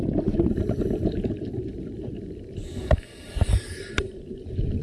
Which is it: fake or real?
real